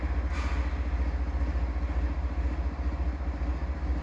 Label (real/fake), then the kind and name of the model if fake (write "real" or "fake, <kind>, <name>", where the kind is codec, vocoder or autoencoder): real